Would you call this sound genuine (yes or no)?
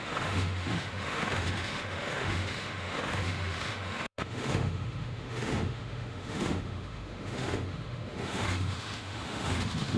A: no